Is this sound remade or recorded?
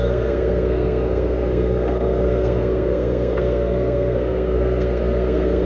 remade